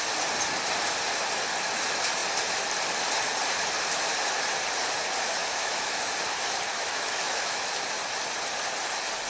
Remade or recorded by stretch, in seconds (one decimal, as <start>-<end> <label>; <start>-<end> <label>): 0.0-5.4 recorded; 5.4-6.0 remade; 6.0-6.7 recorded; 6.7-7.7 remade; 7.7-9.3 recorded